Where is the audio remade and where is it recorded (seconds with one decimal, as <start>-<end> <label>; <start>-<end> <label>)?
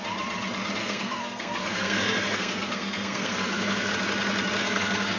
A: 0.0-0.8 recorded; 0.8-3.9 remade; 3.9-4.6 recorded; 4.6-5.2 remade